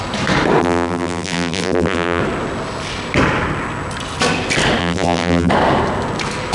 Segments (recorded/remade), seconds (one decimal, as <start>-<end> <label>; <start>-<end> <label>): 0.0-0.6 recorded; 0.6-2.2 remade; 2.2-4.8 recorded; 4.8-5.5 remade; 5.5-6.5 recorded